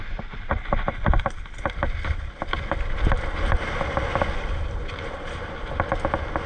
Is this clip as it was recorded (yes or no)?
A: yes